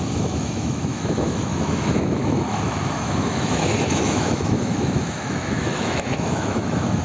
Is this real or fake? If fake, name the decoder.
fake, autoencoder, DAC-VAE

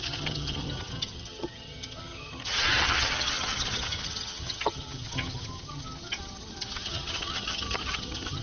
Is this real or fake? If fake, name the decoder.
fake, vocoder, HiFi-GAN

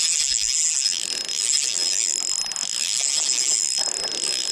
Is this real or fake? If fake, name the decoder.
real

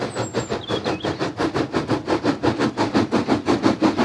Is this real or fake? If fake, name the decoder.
real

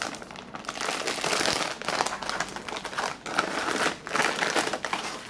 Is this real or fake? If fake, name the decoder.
real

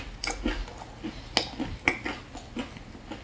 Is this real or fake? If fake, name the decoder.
real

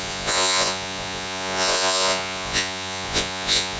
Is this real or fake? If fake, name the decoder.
fake, vocoder, Vocos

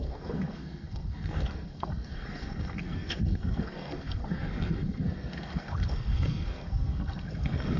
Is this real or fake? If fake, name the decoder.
fake, codec, SNAC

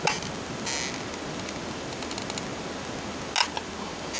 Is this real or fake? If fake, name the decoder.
real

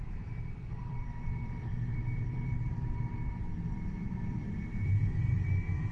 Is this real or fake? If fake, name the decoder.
fake, vocoder, BigVGAN v2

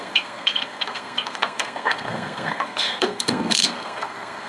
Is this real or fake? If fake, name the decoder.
fake, codec, SNAC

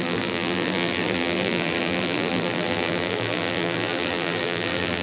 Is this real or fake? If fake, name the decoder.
fake, vocoder, BigVGAN v2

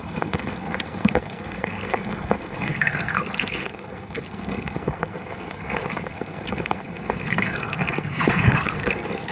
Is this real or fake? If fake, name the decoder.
fake, codec, SNAC